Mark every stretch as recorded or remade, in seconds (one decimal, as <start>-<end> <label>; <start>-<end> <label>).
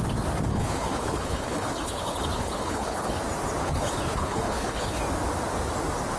0.0-0.5 recorded; 0.5-3.2 remade; 3.2-3.6 recorded; 3.6-5.0 remade; 5.0-6.2 recorded